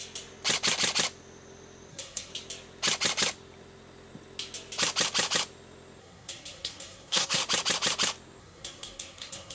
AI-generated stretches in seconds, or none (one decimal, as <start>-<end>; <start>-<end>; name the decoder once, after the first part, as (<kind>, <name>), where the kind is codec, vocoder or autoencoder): 1.9-2.3 (codec, SNAC); 6.0-7.4; 8.4-9.5